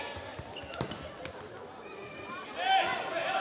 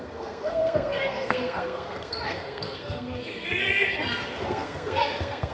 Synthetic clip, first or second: second